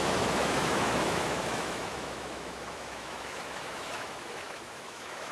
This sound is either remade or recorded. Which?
remade